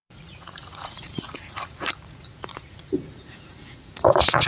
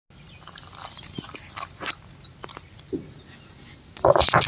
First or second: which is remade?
first